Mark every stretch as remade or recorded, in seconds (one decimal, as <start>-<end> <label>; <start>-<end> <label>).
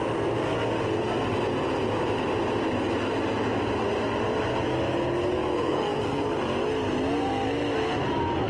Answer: 0.0-5.6 recorded; 5.6-6.2 remade; 6.2-8.5 recorded